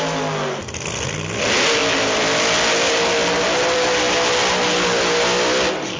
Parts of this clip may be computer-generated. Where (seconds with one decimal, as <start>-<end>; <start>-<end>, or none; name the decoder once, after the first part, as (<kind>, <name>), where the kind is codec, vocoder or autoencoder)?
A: none

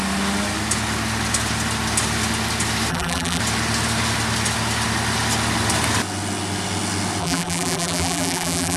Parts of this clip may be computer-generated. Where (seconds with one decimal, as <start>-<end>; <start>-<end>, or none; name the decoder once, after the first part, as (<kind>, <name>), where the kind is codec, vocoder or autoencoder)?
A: 2.9-3.4 (vocoder, BigVGAN v2); 7.2-8.8